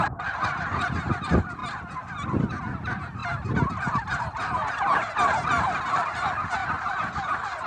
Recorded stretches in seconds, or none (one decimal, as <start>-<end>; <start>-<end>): 0.0-7.7